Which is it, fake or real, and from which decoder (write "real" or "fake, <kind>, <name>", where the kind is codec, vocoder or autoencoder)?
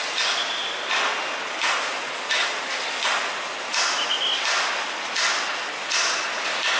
real